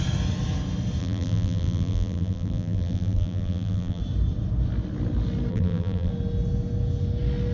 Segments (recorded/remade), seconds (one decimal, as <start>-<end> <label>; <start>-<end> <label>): 0.0-1.0 recorded; 1.0-4.0 remade; 4.0-5.5 recorded; 5.5-6.1 remade; 6.1-7.5 recorded